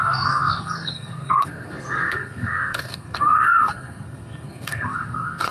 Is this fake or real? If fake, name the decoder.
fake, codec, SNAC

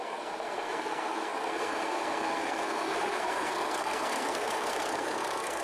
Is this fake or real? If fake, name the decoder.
fake, codec, SNAC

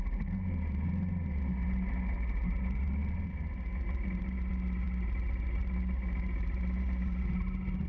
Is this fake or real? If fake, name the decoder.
real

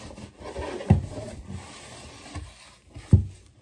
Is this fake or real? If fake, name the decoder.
real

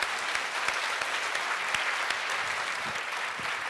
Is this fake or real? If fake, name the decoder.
real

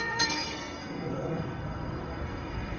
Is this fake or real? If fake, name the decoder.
fake, codec, SNAC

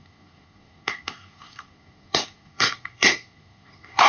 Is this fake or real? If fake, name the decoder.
fake, codec, SNAC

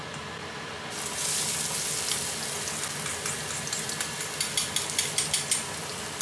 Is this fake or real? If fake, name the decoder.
real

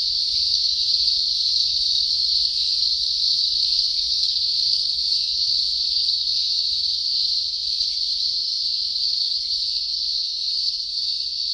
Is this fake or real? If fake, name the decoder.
fake, codec, SNAC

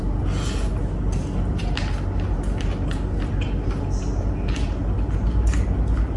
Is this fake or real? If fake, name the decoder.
real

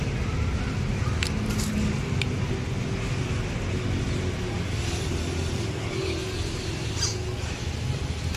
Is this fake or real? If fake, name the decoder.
real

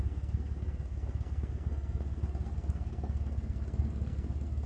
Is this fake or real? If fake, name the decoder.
fake, codec, SNAC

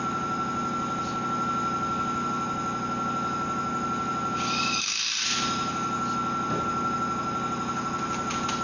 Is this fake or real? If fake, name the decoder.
real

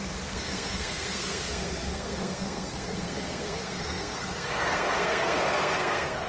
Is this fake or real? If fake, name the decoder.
fake, codec, SNAC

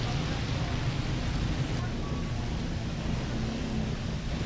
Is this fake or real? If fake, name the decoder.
real